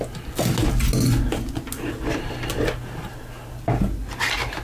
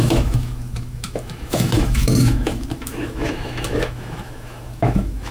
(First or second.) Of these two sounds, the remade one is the second